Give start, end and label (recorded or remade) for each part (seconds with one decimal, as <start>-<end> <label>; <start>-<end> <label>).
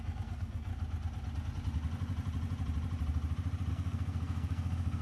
0.0-0.7 remade; 0.7-3.7 recorded; 3.7-5.0 remade